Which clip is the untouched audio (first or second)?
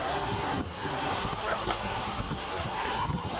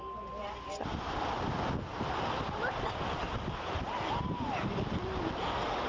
second